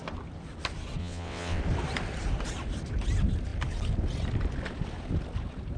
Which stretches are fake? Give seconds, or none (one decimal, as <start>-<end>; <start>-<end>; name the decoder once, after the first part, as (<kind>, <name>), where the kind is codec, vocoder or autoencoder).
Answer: 1.0-1.6 (vocoder, WaveNeXt)